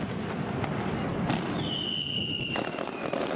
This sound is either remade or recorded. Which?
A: recorded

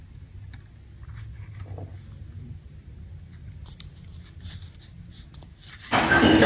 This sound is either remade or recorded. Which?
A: recorded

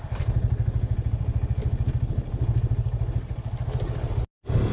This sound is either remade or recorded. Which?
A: recorded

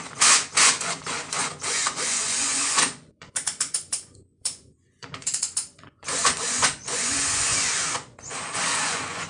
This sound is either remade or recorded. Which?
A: remade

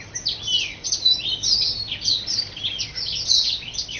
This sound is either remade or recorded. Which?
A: recorded